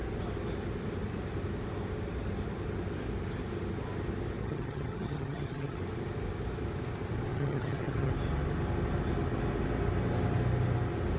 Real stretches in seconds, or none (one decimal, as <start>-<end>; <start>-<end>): 0.0-4.4; 5.8-7.3; 8.1-11.2